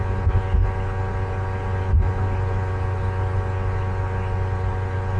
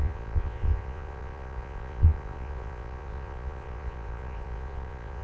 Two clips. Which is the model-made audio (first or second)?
second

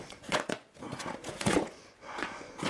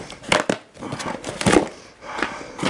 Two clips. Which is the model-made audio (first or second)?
first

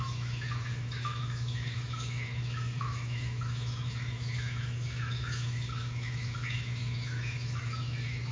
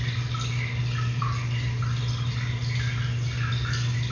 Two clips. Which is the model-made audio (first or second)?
first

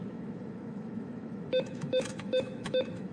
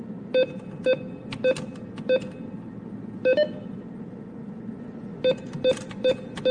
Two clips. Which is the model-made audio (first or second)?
first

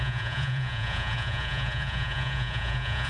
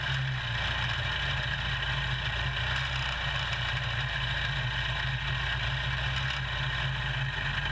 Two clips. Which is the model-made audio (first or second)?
first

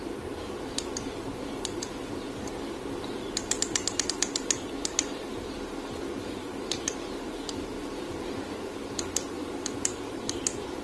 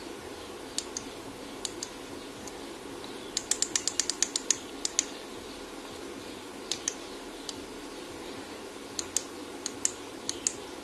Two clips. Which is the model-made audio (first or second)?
first